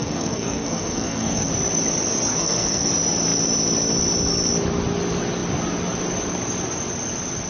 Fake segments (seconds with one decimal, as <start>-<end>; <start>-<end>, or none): 0.0-1.5; 2.3-2.9